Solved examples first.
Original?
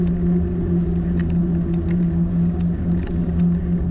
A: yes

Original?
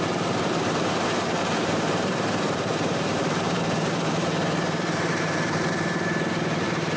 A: no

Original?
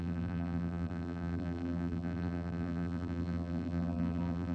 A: no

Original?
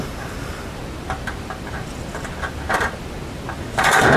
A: no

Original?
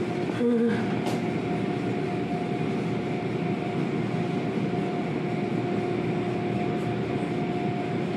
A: yes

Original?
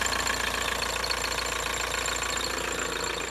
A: yes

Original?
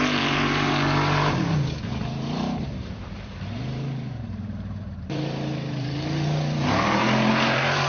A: no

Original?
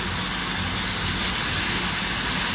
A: yes